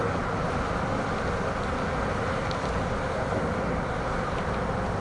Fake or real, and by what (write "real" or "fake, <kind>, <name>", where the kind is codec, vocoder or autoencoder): real